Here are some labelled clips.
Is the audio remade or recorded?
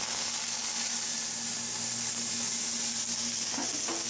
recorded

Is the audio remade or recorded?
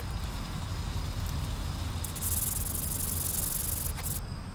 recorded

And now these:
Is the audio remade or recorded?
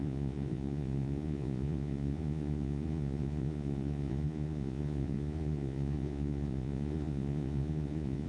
remade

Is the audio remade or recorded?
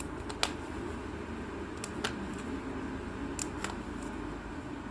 recorded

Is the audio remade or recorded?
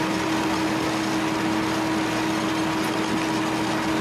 recorded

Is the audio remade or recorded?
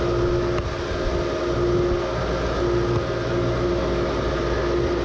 recorded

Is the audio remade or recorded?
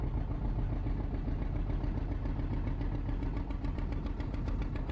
recorded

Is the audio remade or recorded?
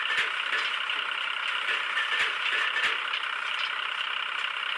recorded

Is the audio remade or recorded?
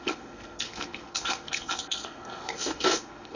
remade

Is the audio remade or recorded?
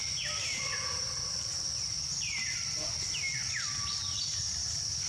recorded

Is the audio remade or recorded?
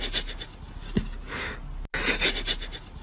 recorded